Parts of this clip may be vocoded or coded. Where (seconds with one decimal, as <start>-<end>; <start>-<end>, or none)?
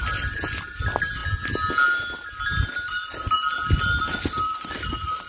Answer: 0.0-1.2; 4.4-5.3